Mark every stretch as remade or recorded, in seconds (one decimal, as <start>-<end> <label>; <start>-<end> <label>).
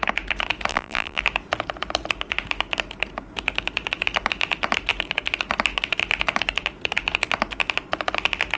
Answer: 0.0-0.7 recorded; 0.7-1.2 remade; 1.2-8.6 recorded